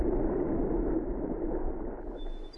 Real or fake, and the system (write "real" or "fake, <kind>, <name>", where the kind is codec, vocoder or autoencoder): real